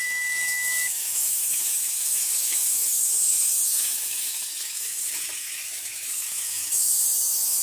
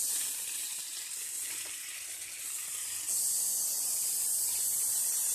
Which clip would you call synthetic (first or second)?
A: first